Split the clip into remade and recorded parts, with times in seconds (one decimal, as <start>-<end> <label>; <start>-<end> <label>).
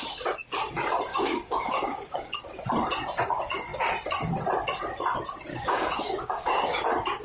0.0-1.1 recorded; 1.1-2.4 remade; 2.4-5.5 recorded; 5.5-6.8 remade; 6.8-7.2 recorded